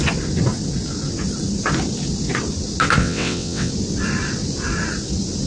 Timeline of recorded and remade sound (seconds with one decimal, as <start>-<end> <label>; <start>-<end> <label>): 0.0-3.0 recorded; 3.0-3.7 remade; 3.7-5.5 recorded